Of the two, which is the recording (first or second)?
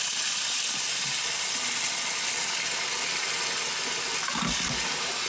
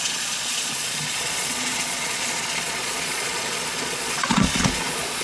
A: first